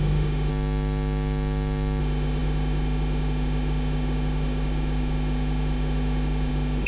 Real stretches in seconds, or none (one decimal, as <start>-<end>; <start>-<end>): 0.5-2.0